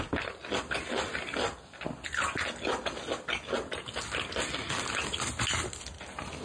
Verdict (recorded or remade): recorded